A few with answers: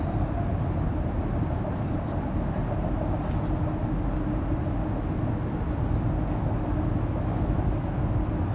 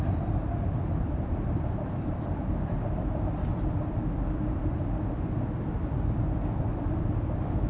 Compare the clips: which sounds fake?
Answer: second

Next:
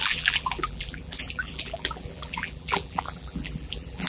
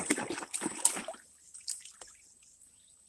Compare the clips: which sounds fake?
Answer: first